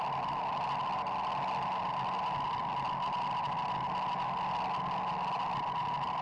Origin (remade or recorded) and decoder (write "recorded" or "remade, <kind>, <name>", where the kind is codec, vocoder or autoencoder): recorded